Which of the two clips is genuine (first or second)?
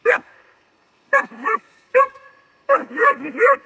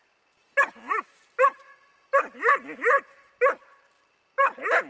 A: second